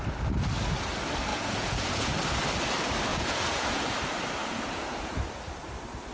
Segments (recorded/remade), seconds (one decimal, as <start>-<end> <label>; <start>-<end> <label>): 0.0-1.3 recorded; 1.3-2.1 remade; 2.1-3.1 recorded; 3.1-3.8 remade; 3.8-4.4 recorded; 4.4-5.2 remade; 5.2-6.1 recorded